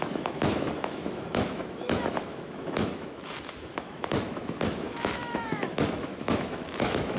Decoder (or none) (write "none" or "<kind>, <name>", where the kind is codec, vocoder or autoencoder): autoencoder, DAC-VAE